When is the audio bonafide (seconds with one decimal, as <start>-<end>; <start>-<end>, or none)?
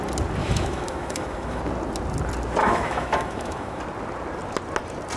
0.0-0.4; 1.6-2.6; 3.8-5.2